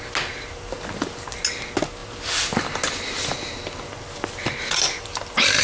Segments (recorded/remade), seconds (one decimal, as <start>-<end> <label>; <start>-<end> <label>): 0.0-5.6 recorded